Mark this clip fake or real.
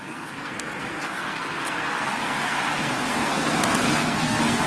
fake